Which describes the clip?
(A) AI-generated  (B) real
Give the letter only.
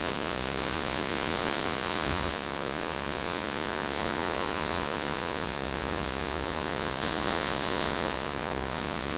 A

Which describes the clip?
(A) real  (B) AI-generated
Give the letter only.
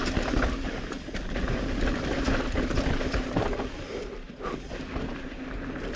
A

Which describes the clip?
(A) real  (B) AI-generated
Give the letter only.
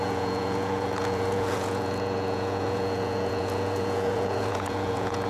B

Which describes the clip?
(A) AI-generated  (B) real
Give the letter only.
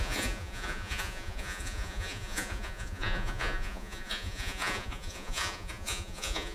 A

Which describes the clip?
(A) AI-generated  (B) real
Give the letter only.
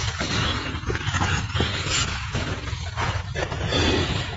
A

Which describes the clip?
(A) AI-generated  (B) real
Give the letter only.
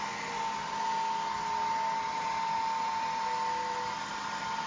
B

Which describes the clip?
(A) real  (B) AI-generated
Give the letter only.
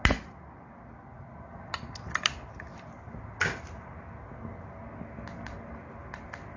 A